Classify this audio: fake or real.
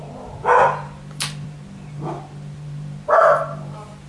real